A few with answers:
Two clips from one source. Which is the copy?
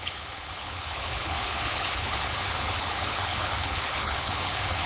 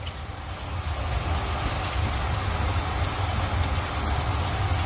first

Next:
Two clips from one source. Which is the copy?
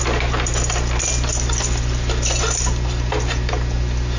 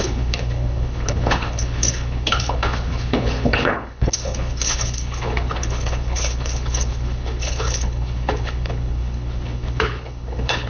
second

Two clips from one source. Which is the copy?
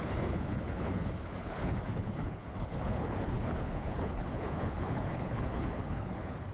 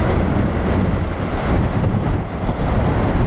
first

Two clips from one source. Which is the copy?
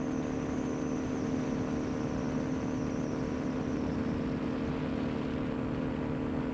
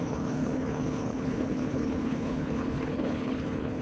second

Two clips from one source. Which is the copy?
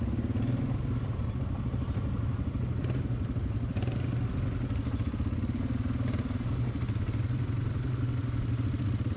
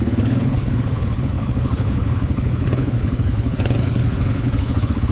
second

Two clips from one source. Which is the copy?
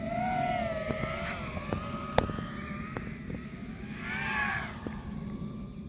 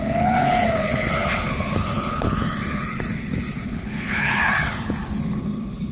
second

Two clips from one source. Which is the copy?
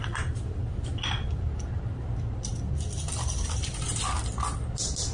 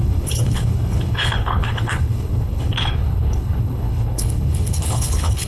second